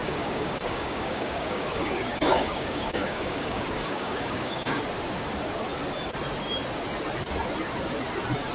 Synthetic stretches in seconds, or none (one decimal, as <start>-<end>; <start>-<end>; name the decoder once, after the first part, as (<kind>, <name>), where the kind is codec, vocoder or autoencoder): 0.0-4.8 (codec, DAC)